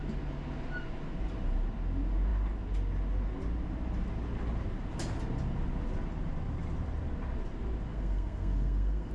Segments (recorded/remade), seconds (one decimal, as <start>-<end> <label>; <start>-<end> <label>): 0.0-7.9 recorded; 7.9-9.1 remade